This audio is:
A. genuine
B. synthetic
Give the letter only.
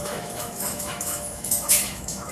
B